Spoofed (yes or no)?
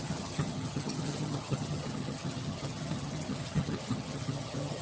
yes